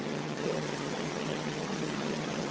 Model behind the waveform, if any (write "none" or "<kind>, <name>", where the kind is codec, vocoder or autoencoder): vocoder, HiFi-GAN